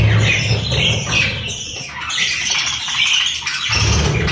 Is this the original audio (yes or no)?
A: yes